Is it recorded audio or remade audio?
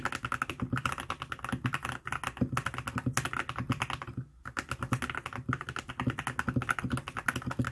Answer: recorded